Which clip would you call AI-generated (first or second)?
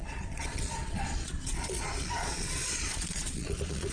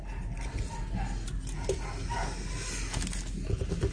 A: first